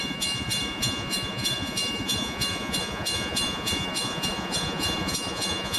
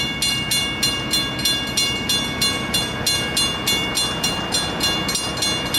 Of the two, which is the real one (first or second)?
second